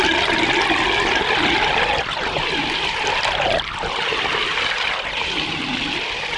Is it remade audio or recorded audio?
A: recorded